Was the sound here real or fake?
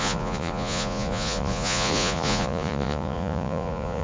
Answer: fake